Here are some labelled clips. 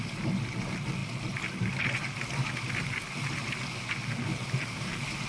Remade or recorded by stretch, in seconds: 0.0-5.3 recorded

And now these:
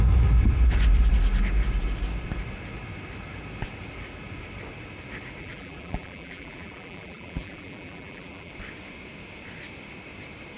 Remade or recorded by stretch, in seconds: 0.0-5.4 recorded; 5.4-8.5 remade; 8.5-10.6 recorded

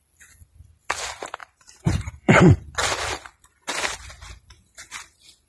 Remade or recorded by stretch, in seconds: 0.0-1.4 recorded; 1.4-2.5 remade; 2.5-5.5 recorded

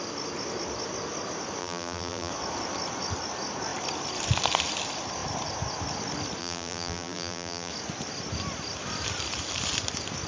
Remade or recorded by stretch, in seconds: 0.0-1.6 recorded; 1.6-2.3 remade; 2.3-6.4 recorded; 6.4-7.7 remade; 7.7-10.3 recorded

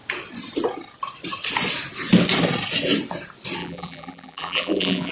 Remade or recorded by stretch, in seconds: 0.0-3.6 recorded; 3.6-5.1 remade